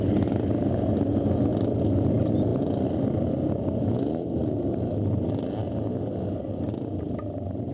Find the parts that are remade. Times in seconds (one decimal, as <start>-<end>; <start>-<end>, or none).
none